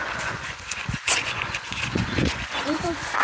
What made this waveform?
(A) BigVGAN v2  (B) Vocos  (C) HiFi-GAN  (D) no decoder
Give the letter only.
B